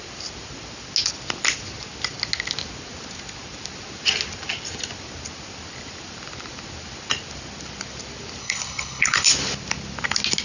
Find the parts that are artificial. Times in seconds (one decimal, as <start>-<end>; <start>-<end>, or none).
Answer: 8.4-9.3